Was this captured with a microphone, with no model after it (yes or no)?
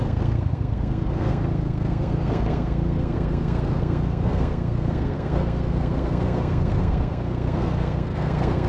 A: no